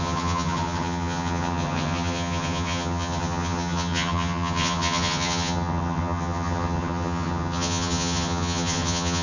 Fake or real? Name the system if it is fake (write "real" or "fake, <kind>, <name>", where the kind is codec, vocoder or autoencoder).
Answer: fake, vocoder, HiFi-GAN